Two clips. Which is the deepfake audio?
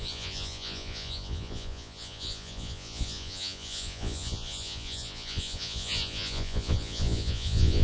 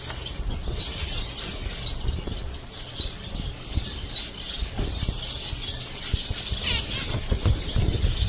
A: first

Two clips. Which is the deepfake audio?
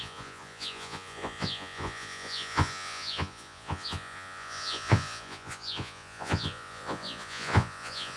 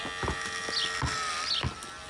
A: first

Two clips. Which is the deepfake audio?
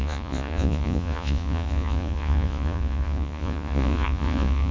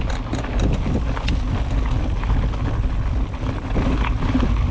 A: first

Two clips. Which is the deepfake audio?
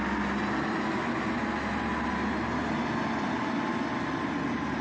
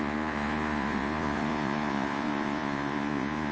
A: second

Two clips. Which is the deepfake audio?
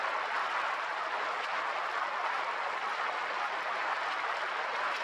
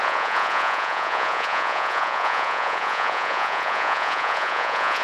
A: second